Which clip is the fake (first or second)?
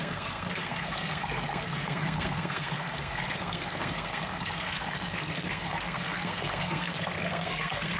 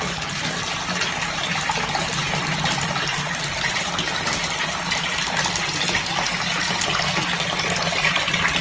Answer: first